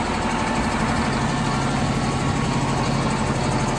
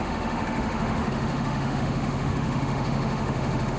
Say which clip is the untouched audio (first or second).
first